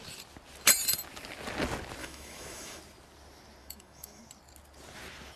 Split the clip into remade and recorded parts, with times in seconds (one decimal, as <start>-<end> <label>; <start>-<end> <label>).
0.0-2.0 recorded; 2.0-2.8 remade; 2.8-3.6 recorded; 3.6-4.2 remade; 4.2-5.4 recorded